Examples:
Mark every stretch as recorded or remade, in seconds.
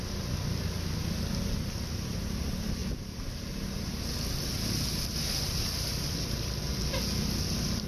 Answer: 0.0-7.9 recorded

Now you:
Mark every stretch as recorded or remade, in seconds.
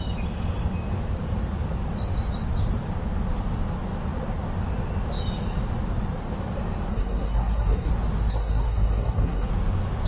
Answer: 0.0-6.9 recorded; 6.9-7.9 remade; 7.9-8.3 recorded; 8.3-9.5 remade; 9.5-10.1 recorded